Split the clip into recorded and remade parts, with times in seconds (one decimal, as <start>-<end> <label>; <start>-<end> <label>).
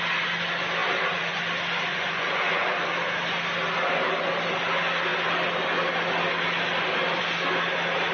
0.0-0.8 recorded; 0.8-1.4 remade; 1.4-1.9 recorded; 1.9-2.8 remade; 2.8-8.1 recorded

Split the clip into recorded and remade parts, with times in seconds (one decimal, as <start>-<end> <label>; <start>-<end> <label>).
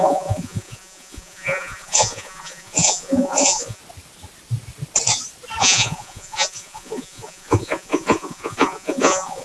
0.0-3.8 remade; 3.8-5.6 recorded; 5.6-9.4 remade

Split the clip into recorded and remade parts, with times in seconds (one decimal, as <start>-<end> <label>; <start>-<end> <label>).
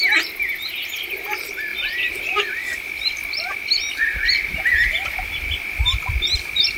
0.0-6.8 recorded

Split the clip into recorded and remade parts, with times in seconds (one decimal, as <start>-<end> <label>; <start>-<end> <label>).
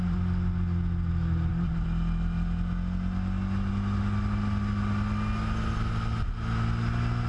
0.0-7.3 recorded